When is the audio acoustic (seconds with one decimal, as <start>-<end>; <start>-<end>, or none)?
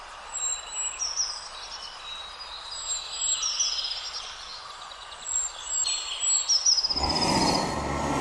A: 0.0-4.5; 5.4-8.2